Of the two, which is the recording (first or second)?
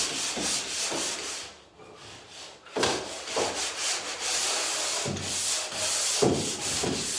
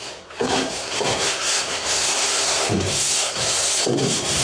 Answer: first